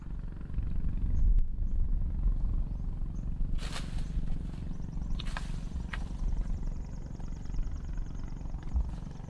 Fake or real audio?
real